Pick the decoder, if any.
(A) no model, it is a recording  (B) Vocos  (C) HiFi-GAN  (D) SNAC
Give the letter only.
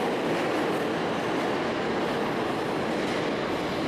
A